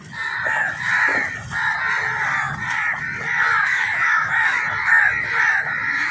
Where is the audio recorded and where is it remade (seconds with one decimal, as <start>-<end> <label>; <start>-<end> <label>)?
0.0-3.6 recorded; 3.6-4.3 remade; 4.3-6.1 recorded